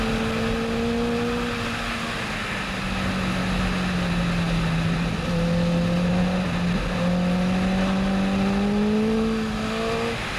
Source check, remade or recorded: recorded